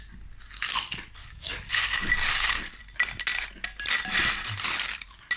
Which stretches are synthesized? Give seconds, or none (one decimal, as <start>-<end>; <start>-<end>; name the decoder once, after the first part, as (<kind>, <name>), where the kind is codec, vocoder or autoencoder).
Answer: 1.2-2.8 (codec, DAC)